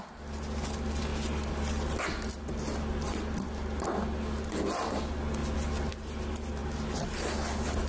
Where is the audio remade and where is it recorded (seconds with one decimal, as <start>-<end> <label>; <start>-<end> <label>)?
0.0-7.9 recorded